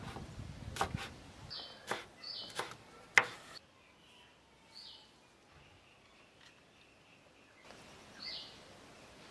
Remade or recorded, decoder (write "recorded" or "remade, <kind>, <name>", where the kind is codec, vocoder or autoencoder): recorded